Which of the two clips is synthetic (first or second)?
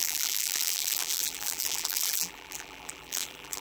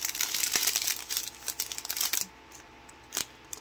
first